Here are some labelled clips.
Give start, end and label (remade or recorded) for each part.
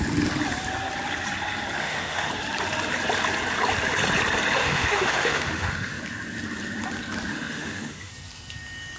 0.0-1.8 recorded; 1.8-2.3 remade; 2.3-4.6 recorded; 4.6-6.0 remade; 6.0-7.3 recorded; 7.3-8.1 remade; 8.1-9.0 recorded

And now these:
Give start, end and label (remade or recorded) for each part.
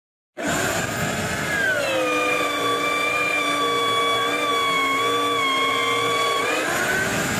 0.0-7.4 recorded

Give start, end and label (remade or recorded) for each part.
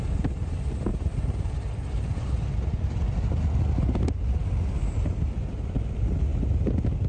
0.0-7.1 recorded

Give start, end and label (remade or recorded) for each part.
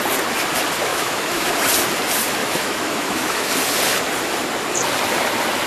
0.0-0.9 recorded; 0.9-1.5 remade; 1.5-2.4 recorded; 2.4-3.5 remade; 3.5-5.7 recorded